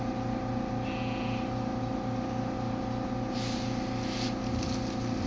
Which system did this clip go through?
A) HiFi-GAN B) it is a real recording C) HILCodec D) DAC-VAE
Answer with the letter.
B